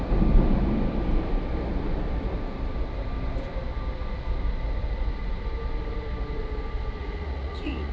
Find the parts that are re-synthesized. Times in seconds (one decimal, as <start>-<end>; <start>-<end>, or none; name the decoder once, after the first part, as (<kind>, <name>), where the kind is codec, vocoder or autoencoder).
7.0-7.9 (vocoder, Vocos)